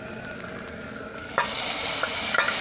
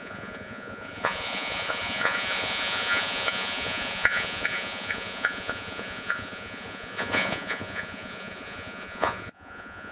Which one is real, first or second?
first